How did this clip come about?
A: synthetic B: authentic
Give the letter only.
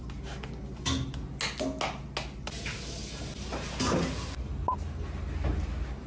B